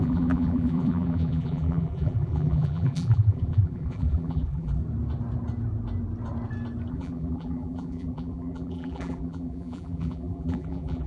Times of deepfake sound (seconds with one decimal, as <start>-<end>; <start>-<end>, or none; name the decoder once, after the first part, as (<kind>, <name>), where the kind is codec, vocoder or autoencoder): 0.0-4.8 (vocoder, BigVGAN v2); 6.9-11.1